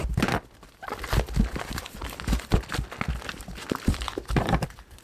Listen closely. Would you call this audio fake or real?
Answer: real